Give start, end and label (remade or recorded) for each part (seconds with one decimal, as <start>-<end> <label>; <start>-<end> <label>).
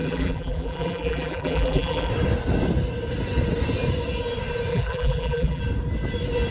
0.0-2.1 remade; 2.1-4.7 recorded; 4.7-5.6 remade; 5.6-6.5 recorded